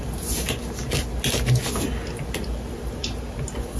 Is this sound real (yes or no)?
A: yes